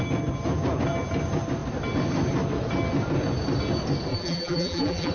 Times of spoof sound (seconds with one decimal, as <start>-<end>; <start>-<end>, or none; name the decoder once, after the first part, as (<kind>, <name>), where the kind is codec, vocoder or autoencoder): 4.1-5.1 (vocoder, BigVGAN v2)